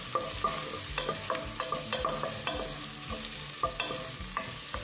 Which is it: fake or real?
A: real